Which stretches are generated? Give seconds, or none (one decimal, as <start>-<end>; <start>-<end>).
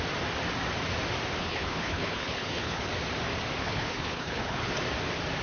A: 1.4-2.9; 3.6-4.7